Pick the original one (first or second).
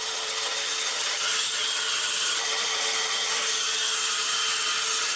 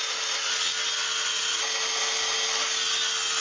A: second